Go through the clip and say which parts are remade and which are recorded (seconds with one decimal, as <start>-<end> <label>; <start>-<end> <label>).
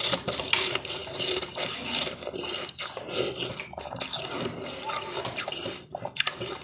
0.0-6.6 recorded